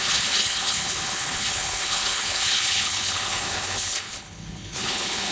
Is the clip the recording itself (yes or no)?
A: no